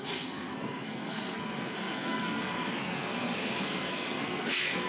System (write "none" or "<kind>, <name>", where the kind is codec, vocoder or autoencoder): codec, SNAC